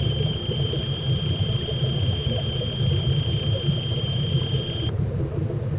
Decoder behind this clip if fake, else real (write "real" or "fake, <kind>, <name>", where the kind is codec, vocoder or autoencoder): fake, vocoder, BigVGAN v2